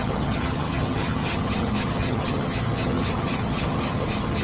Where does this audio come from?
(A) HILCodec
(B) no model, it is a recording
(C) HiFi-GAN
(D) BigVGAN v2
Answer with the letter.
C